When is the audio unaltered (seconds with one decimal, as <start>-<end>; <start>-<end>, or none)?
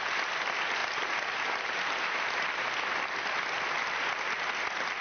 0.0-5.0